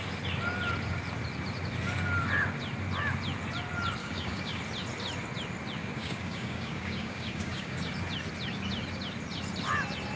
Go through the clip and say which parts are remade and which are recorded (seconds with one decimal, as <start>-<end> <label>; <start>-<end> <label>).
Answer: 0.0-4.0 recorded; 4.0-4.6 remade; 4.6-5.8 recorded; 5.8-7.9 remade; 7.9-10.2 recorded